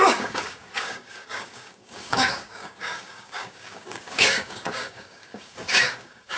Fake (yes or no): yes